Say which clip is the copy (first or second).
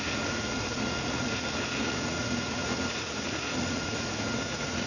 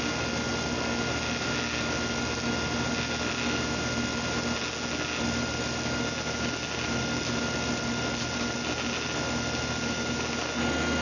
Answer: first